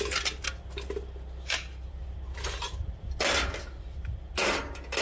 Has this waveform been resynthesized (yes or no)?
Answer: no